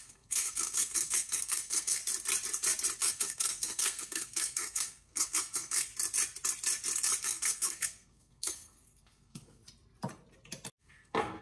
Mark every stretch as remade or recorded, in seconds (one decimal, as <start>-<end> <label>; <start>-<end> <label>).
0.0-2.0 remade; 2.0-3.0 recorded; 3.0-5.9 remade; 5.9-7.2 recorded; 7.2-9.6 remade; 9.6-10.8 recorded; 10.8-11.4 remade